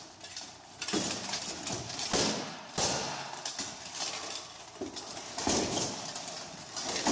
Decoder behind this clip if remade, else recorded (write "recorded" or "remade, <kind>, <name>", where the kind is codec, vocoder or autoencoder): recorded